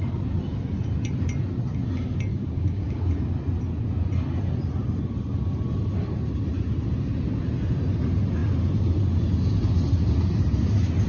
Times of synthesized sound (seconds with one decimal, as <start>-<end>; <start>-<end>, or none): 2.3-3.0